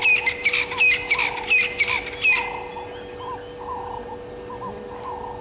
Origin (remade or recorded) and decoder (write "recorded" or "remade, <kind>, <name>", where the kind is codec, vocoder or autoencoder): recorded